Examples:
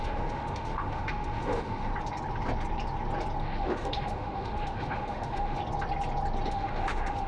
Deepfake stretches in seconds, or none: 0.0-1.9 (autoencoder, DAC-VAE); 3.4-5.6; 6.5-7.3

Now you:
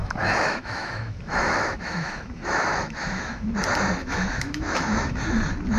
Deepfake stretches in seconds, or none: 0.0-3.5 (autoencoder, DAC-VAE); 4.0-5.2

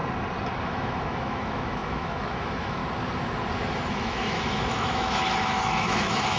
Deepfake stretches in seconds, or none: 0.6-2.8 (autoencoder, DAC-VAE); 3.9-6.4

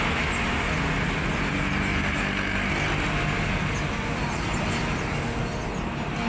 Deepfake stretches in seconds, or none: none

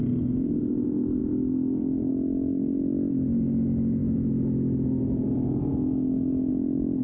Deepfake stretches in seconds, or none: 1.2-2.1 (autoencoder, DAC-VAE); 4.0-5.0; 5.7-6.5

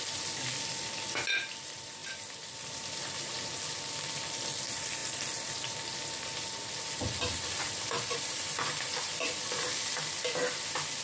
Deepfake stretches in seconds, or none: none